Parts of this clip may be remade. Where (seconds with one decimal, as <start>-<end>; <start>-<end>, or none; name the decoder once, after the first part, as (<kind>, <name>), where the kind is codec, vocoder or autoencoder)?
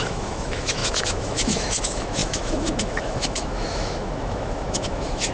0.0-5.3 (autoencoder, DAC-VAE)